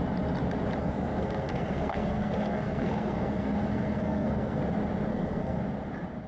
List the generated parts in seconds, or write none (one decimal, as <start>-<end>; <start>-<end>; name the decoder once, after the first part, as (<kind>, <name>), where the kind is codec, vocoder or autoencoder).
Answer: 0.8-4.6 (codec, SNAC); 5.1-5.6